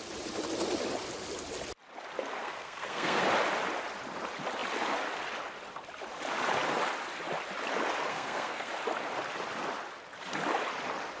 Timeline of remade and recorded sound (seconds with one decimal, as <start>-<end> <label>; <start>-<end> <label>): 0.0-2.4 recorded; 2.4-3.2 remade; 3.2-8.1 recorded; 8.1-8.7 remade; 8.7-11.2 recorded